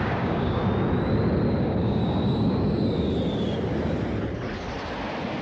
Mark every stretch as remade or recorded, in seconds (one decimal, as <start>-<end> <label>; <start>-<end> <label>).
0.0-0.6 remade; 0.6-1.6 recorded; 1.6-2.0 remade; 2.0-5.4 recorded